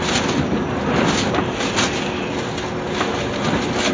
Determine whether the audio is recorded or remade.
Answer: recorded